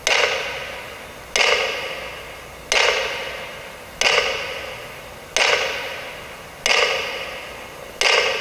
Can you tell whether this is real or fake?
real